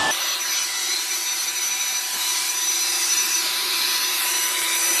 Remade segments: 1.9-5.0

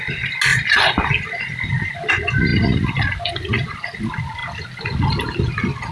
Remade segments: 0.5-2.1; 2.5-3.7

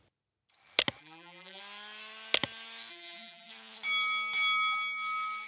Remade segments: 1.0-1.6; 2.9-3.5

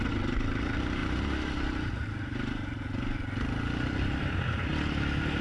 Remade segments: none